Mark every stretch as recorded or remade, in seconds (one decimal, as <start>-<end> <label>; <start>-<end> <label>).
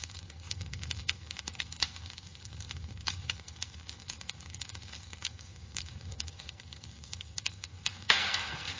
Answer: 0.0-8.8 remade